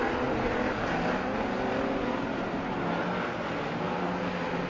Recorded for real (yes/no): yes